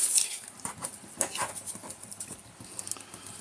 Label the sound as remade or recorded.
recorded